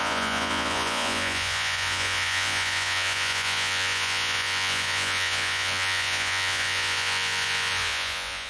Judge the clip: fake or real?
fake